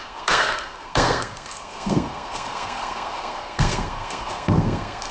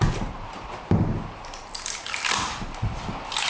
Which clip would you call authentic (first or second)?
second